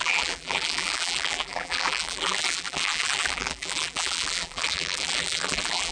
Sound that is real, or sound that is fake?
fake